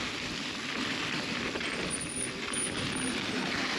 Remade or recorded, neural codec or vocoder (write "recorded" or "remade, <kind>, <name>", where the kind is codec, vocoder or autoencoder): recorded